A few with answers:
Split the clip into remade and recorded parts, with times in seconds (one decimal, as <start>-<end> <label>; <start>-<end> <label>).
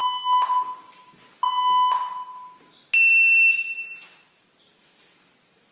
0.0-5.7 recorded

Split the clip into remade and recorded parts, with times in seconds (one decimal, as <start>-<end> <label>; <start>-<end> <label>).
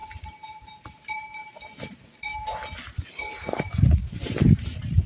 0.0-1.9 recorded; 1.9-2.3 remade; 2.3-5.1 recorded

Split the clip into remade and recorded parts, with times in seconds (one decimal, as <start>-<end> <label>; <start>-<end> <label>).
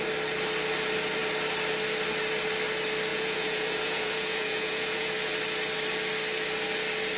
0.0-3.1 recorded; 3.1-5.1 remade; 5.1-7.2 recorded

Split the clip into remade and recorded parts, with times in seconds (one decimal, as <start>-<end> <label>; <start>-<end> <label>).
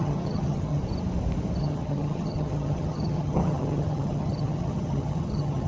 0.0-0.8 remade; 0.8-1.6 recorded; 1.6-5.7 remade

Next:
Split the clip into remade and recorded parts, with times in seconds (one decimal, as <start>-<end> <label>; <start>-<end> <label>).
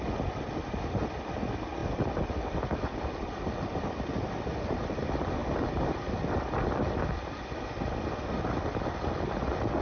0.0-9.8 recorded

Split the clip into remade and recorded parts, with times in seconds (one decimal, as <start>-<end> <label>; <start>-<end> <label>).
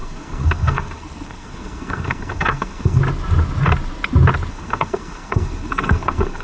0.0-3.0 remade; 3.0-4.5 recorded; 4.5-6.4 remade